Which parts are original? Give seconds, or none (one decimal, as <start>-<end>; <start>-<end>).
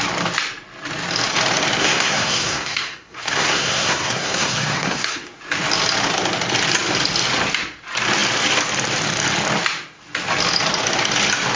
0.0-1.8; 5.4-11.6